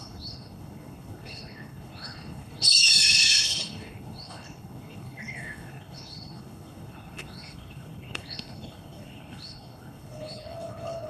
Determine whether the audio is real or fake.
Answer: fake